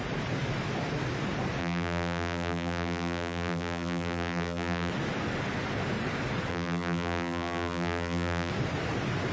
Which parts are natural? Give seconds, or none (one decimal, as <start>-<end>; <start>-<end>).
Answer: 0.0-1.6; 4.9-6.5; 8.5-9.3